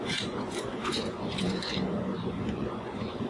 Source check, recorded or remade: remade